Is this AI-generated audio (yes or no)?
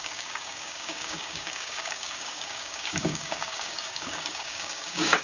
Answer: yes